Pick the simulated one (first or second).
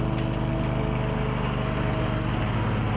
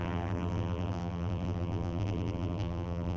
second